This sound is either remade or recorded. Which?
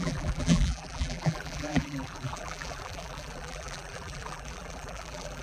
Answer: remade